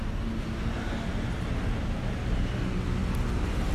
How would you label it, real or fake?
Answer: real